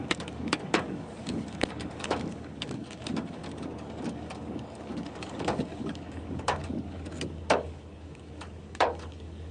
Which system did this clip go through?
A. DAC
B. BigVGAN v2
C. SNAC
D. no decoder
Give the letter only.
A